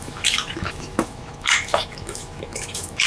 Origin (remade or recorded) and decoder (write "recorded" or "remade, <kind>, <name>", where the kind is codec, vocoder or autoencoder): remade, autoencoder, DAC-VAE